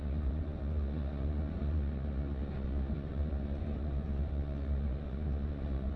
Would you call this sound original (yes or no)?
no